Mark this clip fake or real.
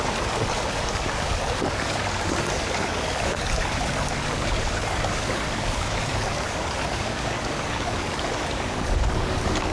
fake